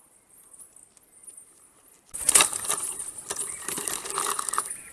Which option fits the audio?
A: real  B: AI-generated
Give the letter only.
A